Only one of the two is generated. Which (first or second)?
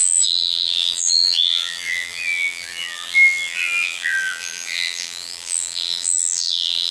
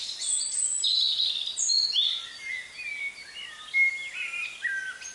first